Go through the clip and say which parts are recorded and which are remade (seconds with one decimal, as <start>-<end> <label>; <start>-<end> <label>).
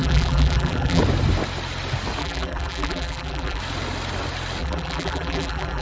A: 0.0-1.0 remade; 1.0-2.2 recorded; 2.2-3.6 remade; 3.6-4.6 recorded; 4.6-5.8 remade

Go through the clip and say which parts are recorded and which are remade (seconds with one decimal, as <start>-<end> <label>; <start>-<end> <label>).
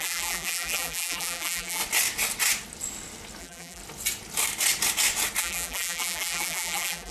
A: 0.0-1.8 remade; 1.8-3.4 recorded; 3.4-3.8 remade; 3.8-5.4 recorded; 5.4-7.1 remade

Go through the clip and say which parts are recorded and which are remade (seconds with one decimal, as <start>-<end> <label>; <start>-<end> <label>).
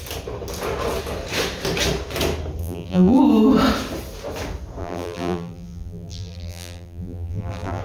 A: 0.0-2.6 recorded; 2.6-3.2 remade; 3.2-4.8 recorded; 4.8-7.8 remade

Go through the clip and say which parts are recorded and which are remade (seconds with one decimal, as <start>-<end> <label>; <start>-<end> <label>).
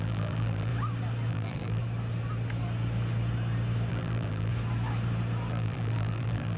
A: 0.0-0.7 remade; 0.7-1.3 recorded; 1.3-1.8 remade; 1.8-3.9 recorded; 3.9-4.5 remade; 4.5-5.5 recorded; 5.5-6.6 remade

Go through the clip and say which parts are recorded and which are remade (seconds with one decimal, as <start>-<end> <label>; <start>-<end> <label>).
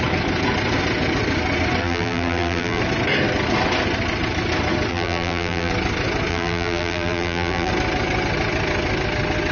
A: 0.0-1.8 recorded; 1.8-2.8 remade; 2.8-4.9 recorded; 4.9-5.7 remade; 5.7-6.3 recorded; 6.3-7.7 remade; 7.7-9.5 recorded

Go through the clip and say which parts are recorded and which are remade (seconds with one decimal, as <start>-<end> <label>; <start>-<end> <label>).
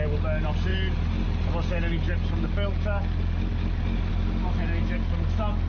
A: 0.0-5.7 recorded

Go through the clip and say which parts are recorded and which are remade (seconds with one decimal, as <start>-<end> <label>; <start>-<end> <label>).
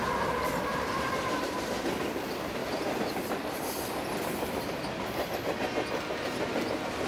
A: 0.0-2.6 remade; 2.6-7.1 recorded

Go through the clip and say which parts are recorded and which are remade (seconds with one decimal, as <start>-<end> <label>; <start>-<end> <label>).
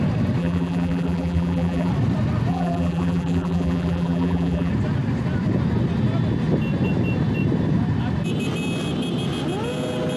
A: 0.0-0.4 recorded; 0.4-1.9 remade; 1.9-2.5 recorded; 2.5-4.7 remade; 4.7-10.2 recorded